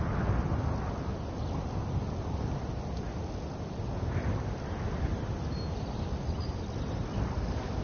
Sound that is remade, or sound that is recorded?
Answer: recorded